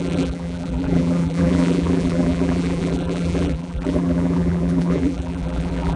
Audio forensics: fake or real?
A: fake